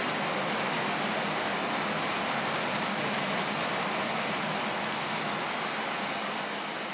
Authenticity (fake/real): real